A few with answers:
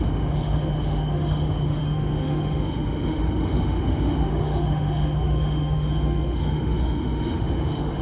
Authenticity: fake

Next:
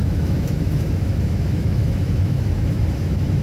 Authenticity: fake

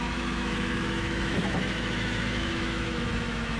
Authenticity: fake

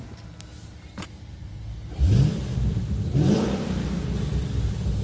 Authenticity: real